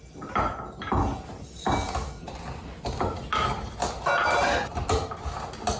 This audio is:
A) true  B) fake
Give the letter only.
A